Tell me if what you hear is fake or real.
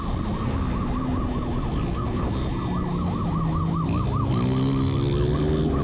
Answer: real